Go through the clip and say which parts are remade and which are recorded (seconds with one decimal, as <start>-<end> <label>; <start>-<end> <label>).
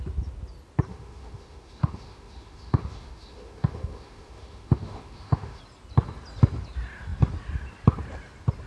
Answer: 0.0-0.9 recorded; 0.9-5.6 remade; 5.6-8.7 recorded